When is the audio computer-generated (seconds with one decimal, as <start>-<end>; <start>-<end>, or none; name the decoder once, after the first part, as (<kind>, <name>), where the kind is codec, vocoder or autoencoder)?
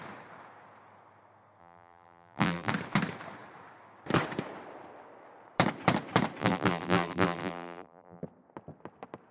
1.6-2.7 (vocoder, BigVGAN v2); 6.4-8.2